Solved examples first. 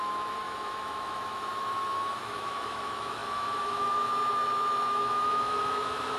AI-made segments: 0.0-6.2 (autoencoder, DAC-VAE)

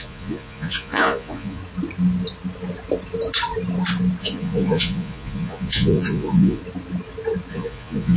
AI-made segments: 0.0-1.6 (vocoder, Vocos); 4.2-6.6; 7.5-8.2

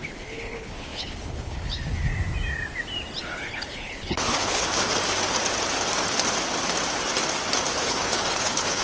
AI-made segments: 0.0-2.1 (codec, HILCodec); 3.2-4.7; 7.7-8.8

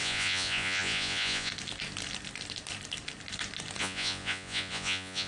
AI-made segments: 0.0-1.5 (vocoder, Vocos); 3.8-5.3

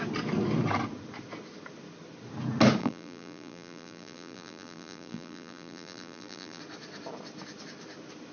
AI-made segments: 2.8-6.6 (vocoder, BigVGAN v2)

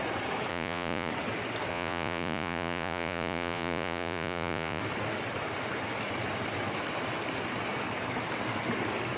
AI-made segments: 0.5-1.1 (vocoder, Vocos); 1.7-4.8

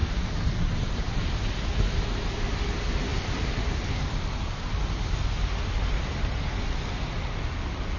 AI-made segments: none

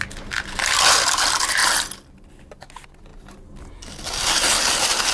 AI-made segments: none